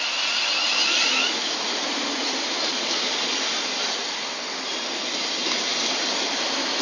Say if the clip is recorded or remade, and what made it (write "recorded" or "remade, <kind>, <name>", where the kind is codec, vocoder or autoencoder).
recorded